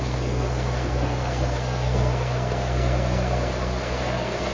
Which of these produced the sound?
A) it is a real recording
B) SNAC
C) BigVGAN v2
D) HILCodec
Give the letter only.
B